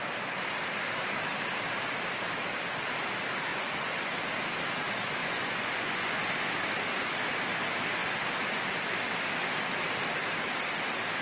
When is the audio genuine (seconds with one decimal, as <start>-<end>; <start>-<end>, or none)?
0.0-3.5; 4.1-5.2; 6.3-11.2